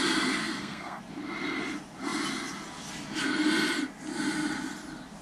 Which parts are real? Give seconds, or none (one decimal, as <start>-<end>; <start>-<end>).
0.0-0.4; 1.0-5.2